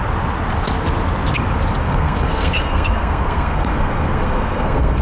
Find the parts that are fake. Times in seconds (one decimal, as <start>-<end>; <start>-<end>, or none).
1.8-5.0